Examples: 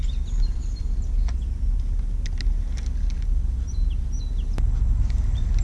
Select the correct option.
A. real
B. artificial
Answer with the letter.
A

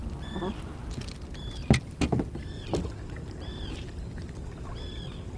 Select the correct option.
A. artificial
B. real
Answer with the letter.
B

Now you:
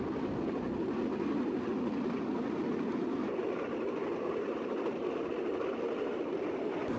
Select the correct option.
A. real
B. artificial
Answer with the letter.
A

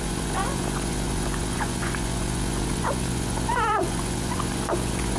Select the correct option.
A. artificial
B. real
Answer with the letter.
A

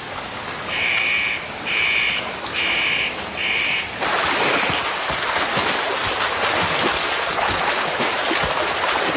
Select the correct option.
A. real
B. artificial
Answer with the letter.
A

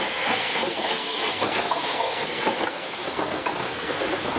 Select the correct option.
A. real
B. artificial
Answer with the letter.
B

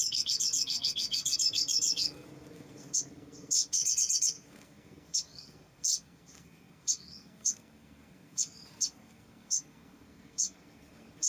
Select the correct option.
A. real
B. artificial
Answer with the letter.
B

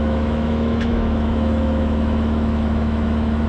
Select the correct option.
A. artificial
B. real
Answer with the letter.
A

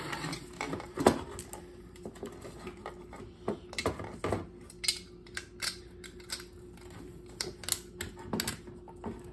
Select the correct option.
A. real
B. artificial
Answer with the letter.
A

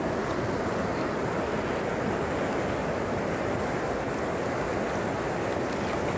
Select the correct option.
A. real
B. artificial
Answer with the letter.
A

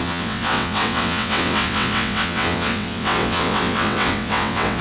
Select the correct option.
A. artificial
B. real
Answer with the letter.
A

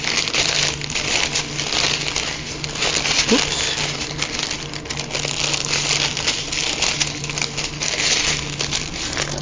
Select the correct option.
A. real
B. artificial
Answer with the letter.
A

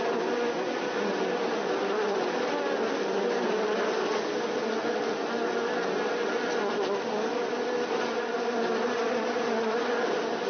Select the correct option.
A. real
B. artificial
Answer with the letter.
A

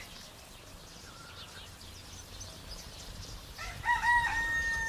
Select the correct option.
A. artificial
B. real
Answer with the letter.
B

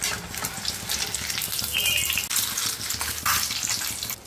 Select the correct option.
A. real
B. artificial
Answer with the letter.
A